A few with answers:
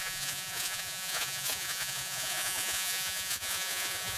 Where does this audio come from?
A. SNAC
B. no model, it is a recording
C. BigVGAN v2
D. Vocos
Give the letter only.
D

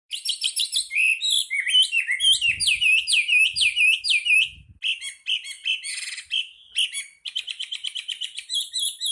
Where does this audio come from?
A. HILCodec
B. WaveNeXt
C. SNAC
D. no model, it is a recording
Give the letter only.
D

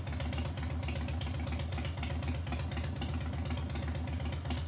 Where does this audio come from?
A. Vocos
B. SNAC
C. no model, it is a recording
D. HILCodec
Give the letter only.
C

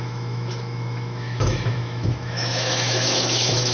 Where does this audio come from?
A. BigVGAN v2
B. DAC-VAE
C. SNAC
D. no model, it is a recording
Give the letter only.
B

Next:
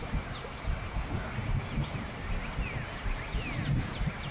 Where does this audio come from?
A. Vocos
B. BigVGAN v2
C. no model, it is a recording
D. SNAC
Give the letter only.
C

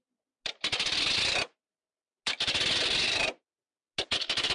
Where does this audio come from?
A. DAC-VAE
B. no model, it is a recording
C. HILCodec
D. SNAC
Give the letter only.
B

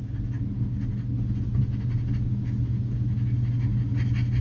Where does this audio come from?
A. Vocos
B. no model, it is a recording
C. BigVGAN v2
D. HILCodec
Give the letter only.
B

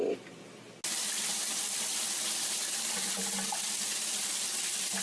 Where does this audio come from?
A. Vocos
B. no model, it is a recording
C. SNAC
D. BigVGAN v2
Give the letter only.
B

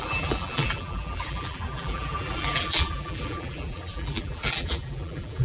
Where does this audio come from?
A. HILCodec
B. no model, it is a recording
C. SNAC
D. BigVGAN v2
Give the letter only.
D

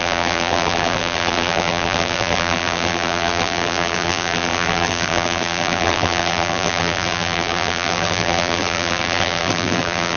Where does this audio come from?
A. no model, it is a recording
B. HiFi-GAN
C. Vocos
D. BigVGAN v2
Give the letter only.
D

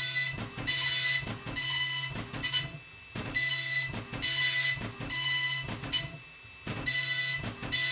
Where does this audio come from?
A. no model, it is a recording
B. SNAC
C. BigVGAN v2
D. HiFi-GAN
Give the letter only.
A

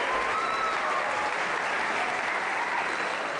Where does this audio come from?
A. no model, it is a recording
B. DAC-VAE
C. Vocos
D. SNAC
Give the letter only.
A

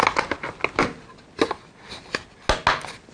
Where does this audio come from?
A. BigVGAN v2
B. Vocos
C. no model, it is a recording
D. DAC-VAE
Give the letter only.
C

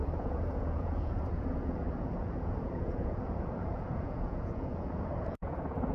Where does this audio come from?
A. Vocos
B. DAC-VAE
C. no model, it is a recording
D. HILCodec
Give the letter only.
A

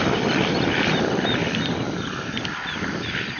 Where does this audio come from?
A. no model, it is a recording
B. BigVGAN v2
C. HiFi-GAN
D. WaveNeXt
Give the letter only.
A